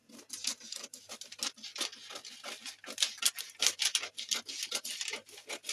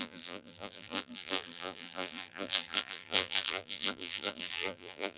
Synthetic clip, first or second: second